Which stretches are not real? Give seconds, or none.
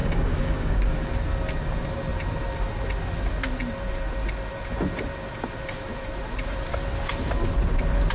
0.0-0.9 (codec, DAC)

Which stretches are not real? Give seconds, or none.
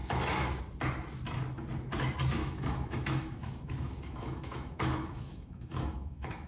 0.0-0.6 (autoencoder, DAC-VAE); 2.4-6.5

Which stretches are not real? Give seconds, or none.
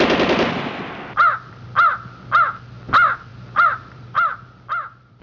3.3-4.4 (vocoder, BigVGAN v2)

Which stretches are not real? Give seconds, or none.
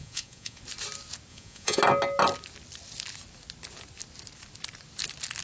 0.0-0.6 (vocoder, Vocos); 1.3-1.8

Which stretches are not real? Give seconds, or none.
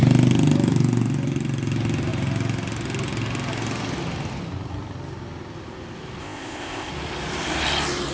6.2-6.9 (codec, ZipCodec)